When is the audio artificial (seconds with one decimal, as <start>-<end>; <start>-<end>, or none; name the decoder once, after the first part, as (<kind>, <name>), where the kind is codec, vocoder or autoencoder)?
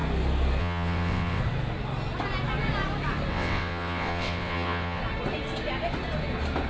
0.6-1.4 (vocoder, WaveNeXt); 3.3-5.0